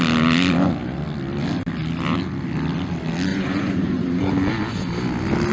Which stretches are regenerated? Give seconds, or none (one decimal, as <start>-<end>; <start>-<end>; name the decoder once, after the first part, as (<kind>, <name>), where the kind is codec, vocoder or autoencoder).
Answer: 3.3-4.3 (vocoder, Vocos)

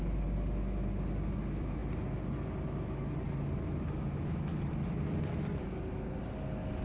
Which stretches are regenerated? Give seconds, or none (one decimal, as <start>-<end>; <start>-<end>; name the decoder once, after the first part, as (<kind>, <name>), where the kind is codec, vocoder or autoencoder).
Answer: none

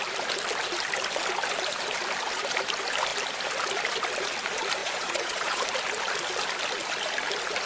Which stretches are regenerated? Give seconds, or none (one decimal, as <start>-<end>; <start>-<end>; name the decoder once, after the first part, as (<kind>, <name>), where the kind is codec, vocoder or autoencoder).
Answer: 4.8-5.6 (vocoder, Vocos)

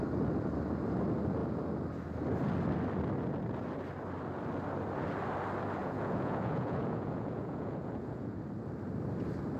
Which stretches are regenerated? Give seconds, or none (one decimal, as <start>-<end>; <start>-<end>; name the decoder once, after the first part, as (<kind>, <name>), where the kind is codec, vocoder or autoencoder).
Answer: 5.8-8.4 (vocoder, Vocos)

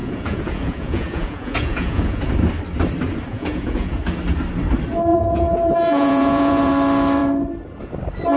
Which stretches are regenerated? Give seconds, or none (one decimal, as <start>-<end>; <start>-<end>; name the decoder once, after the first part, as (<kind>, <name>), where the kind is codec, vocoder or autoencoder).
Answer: 0.0-2.3 (vocoder, Vocos); 3.3-4.0; 5.1-6.7

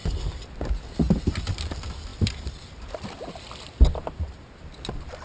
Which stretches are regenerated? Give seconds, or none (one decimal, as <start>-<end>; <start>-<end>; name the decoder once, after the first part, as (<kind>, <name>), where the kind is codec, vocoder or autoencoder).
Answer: none

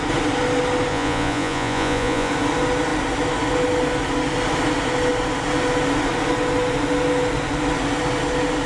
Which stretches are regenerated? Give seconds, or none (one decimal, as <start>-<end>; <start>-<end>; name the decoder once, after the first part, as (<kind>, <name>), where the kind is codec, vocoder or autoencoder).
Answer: 0.9-2.3 (vocoder, Vocos)